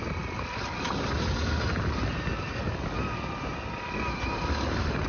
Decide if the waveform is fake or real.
real